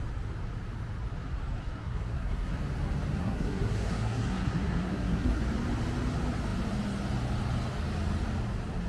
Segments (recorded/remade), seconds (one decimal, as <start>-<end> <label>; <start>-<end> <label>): 0.0-1.6 recorded; 1.6-2.5 remade; 2.5-3.2 recorded; 3.2-5.4 remade; 5.4-8.9 recorded